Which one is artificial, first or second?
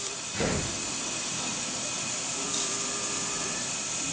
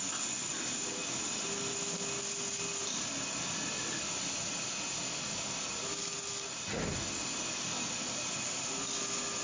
first